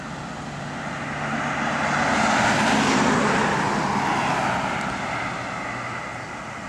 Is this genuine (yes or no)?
yes